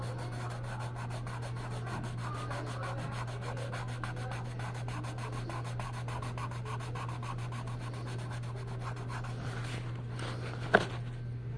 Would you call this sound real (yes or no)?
yes